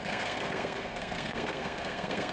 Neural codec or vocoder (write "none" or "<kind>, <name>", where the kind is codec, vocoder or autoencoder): codec, SNAC